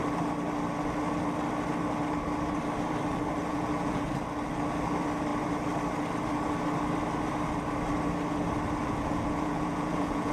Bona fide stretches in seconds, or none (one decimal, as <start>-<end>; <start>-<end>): 0.0-3.5; 4.1-8.8